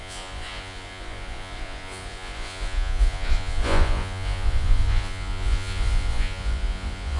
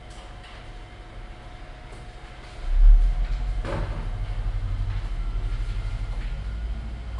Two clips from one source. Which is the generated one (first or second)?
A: first